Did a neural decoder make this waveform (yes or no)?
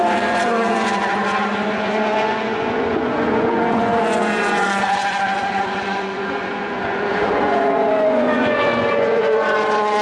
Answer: yes